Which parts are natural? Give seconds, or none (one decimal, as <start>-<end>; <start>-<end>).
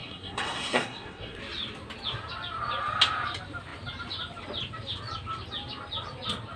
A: 1.4-6.6